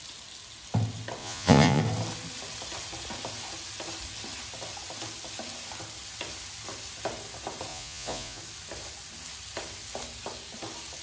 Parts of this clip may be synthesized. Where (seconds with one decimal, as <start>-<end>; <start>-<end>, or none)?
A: 1.2-1.8; 7.7-8.4